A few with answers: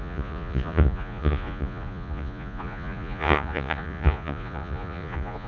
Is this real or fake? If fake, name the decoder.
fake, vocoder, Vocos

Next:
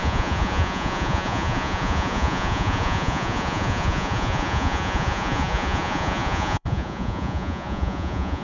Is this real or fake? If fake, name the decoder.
fake, vocoder, Vocos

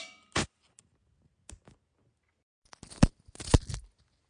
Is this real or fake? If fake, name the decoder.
real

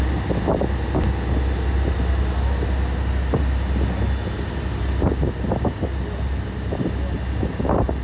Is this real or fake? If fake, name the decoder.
real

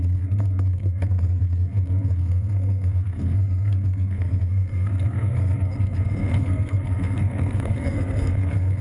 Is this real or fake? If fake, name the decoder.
fake, codec, SNAC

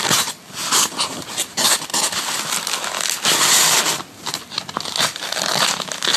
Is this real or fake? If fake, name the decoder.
real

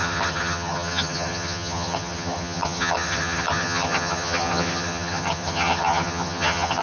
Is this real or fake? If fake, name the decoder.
fake, vocoder, HiFi-GAN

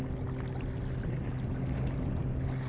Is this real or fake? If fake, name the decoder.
real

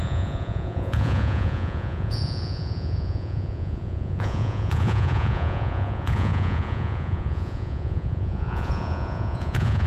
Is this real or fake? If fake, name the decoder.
fake, vocoder, Vocos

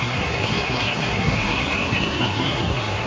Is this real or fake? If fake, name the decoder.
fake, codec, SNAC